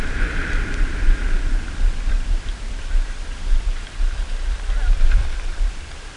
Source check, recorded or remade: remade